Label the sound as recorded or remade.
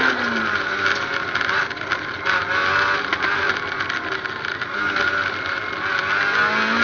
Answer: recorded